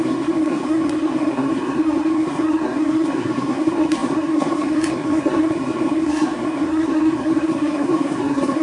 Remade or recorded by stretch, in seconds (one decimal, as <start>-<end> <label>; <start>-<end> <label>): 0.0-8.6 remade